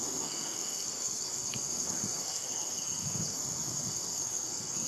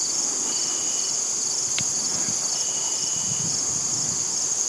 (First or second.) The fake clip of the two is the first